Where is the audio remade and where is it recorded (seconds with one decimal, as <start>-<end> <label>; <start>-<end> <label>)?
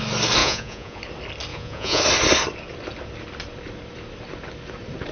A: 0.0-0.4 recorded; 0.4-1.0 remade; 1.0-1.5 recorded; 1.5-2.0 remade; 2.0-5.1 recorded